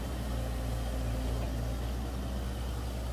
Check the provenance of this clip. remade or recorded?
recorded